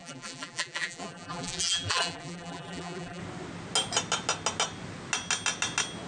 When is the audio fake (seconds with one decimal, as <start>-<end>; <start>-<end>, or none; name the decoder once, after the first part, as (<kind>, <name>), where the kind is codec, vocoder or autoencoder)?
0.0-3.2 (vocoder, BigVGAN v2)